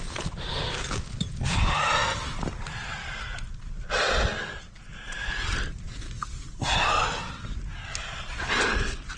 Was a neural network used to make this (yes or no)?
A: no